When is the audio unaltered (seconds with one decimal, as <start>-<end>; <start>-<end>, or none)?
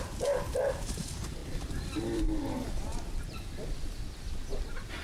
0.0-1.4; 2.2-5.0